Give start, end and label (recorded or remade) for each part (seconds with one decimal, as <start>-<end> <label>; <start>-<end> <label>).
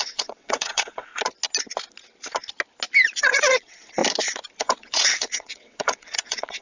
0.0-1.1 remade; 1.1-3.2 recorded; 3.2-4.0 remade; 4.0-4.6 recorded; 4.6-6.6 remade